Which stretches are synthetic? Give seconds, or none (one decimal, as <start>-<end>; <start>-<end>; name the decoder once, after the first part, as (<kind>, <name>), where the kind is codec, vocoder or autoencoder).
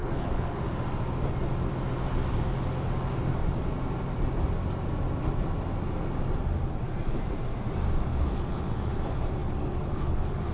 0.0-0.6 (codec, HILCodec); 8.1-8.9; 9.4-10.5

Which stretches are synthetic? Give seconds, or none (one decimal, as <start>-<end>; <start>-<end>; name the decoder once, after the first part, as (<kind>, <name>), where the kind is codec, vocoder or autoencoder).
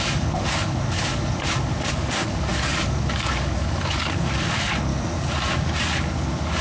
0.0-4.9 (codec, DAC); 5.5-6.6